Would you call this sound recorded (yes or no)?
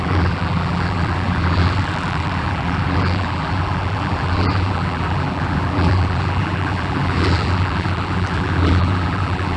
no